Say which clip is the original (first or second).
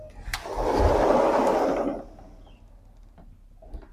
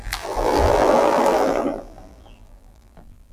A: first